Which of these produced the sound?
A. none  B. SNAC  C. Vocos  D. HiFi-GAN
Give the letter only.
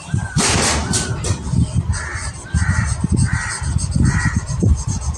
A